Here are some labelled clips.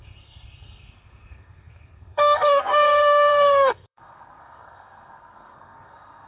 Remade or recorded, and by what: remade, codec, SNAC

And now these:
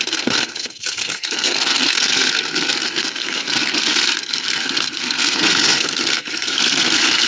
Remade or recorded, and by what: remade, codec, SNAC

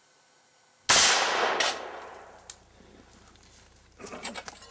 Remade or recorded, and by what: recorded